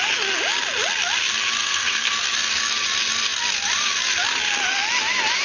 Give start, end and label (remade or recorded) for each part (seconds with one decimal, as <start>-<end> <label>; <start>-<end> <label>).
0.0-1.6 recorded; 1.6-2.1 remade; 2.1-5.4 recorded